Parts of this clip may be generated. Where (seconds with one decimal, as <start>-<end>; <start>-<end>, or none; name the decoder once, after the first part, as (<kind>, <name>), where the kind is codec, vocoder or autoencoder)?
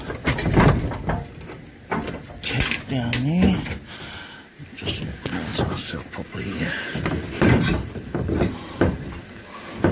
none